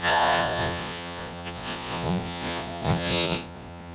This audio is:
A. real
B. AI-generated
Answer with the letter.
B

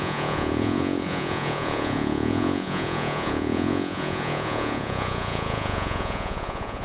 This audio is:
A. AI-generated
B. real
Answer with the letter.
A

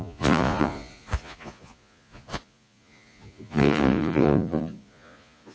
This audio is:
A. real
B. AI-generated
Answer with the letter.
B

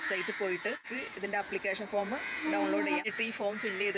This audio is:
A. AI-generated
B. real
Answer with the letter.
A